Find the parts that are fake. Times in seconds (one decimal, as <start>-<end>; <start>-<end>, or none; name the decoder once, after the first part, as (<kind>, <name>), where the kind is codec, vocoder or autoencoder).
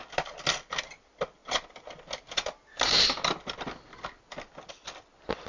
none